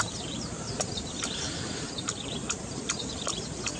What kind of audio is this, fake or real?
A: fake